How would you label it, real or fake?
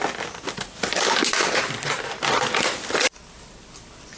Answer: real